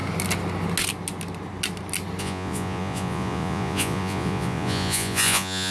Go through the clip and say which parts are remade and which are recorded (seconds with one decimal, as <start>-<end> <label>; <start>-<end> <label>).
0.0-2.2 recorded; 2.2-5.7 remade